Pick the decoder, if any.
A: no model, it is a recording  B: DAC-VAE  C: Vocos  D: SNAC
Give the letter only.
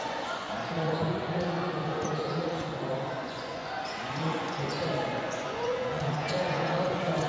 C